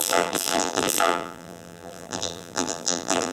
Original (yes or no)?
no